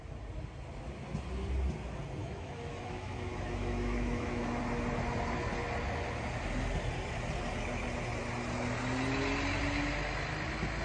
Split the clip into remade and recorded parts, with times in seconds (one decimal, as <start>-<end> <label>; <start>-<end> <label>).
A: 0.0-2.2 recorded; 2.2-4.6 remade; 4.6-10.8 recorded